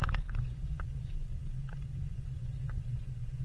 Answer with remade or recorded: remade